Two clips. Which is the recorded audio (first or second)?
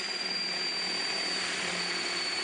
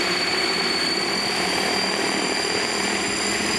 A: first